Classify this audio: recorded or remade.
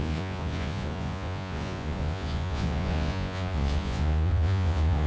remade